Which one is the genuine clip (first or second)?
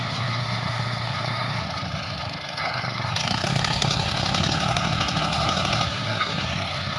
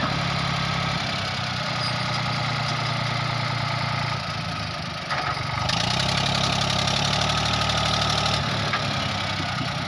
second